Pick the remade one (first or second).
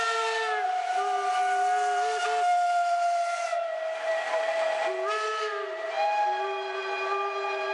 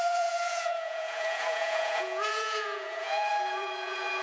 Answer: second